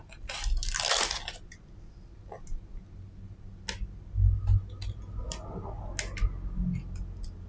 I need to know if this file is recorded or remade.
recorded